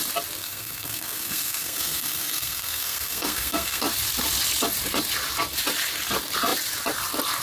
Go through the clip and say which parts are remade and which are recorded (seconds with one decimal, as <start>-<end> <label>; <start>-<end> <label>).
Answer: 0.0-0.4 recorded; 0.4-3.8 remade; 3.8-7.4 recorded